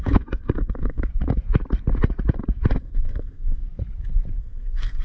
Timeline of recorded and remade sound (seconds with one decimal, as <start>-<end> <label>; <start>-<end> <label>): 0.0-1.1 remade; 1.1-2.8 recorded; 2.8-3.6 remade; 3.6-4.4 recorded; 4.4-5.0 remade